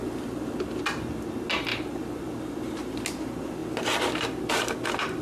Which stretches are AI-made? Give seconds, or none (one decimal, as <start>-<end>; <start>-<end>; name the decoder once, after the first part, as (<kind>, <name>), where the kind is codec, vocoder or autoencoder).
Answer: 1.7-2.2 (vocoder, BigVGAN v2)